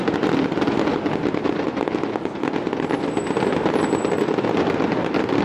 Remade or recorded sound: recorded